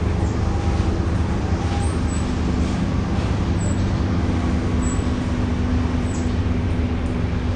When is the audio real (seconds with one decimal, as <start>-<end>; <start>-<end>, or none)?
0.0-7.6